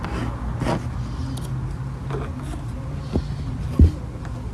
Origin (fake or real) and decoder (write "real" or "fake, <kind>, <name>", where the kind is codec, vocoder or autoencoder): real